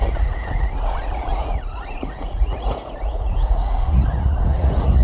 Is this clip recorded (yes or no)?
no